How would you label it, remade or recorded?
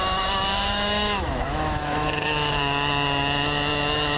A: remade